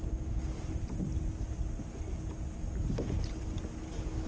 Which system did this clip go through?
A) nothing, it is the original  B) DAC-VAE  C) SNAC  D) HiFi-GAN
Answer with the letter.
A